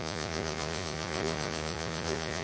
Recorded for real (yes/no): no